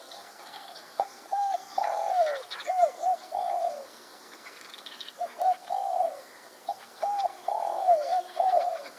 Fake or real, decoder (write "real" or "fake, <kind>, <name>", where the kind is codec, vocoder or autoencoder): fake, codec, SNAC